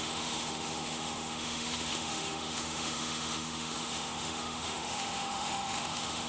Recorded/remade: remade